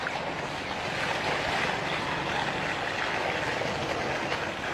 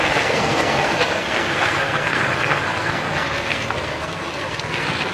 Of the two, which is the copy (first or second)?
second